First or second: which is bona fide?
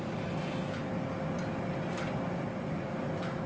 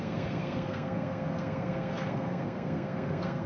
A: first